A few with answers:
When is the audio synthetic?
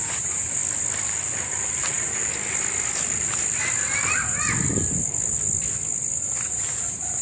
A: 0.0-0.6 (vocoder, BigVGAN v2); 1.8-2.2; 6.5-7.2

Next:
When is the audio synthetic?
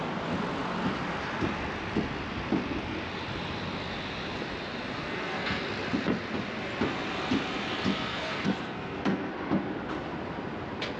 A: 5.0-5.6 (codec, SNAC); 8.1-9.3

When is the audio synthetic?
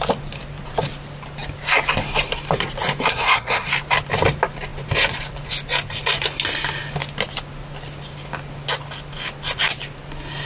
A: 3.1-3.7 (codec, SNAC)